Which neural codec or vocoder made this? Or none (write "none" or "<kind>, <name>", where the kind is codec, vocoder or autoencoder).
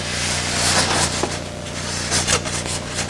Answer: none